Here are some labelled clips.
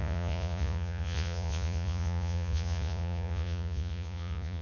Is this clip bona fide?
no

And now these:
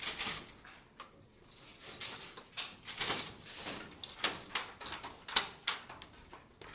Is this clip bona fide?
yes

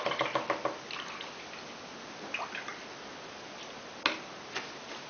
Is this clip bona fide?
yes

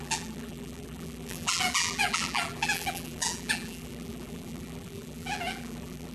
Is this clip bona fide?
no